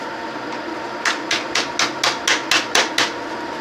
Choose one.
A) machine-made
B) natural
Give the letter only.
B